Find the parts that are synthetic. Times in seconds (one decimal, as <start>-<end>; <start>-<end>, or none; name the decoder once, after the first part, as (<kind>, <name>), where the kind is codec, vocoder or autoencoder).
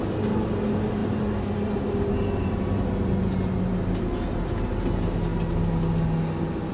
none